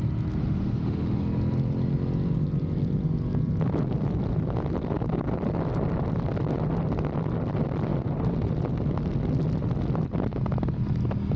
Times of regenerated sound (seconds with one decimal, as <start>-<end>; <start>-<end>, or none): 0.4-1.2